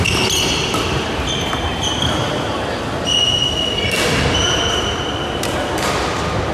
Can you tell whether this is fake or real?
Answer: real